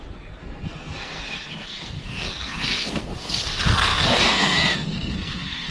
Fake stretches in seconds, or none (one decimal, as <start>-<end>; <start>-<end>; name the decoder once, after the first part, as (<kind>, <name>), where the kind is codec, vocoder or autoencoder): 0.0-5.7 (codec, SNAC)